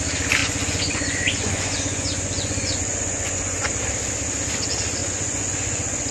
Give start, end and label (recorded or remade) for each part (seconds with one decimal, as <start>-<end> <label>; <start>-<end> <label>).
0.0-0.4 recorded; 0.4-3.7 remade; 3.7-5.0 recorded; 5.0-6.1 remade